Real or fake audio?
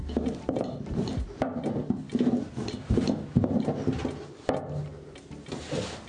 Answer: real